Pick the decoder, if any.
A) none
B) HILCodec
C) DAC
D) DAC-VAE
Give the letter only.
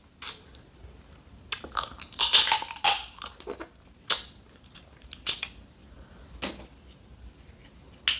A